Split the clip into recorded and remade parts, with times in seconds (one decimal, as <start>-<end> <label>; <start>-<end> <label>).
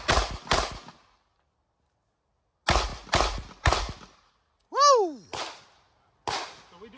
0.0-7.0 recorded